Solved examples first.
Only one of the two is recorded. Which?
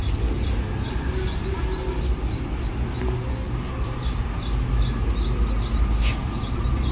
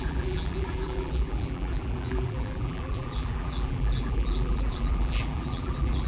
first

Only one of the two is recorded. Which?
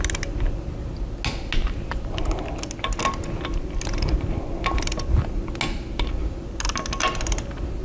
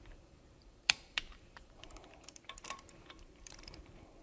first